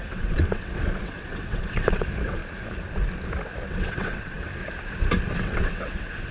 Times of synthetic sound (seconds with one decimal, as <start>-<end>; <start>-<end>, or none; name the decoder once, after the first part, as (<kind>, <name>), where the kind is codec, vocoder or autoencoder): 0.0-2.4 (vocoder, WaveNeXt); 3.7-4.6; 5.4-6.3